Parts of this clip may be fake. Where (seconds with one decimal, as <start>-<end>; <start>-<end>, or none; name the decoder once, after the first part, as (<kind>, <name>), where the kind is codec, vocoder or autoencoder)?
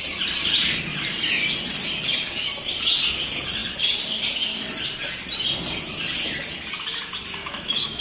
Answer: 7.4-8.0 (autoencoder, DAC-VAE)